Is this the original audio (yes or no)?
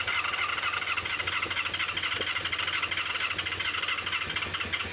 yes